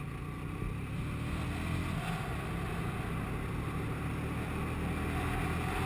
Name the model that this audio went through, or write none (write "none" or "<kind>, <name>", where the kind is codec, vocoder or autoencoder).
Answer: none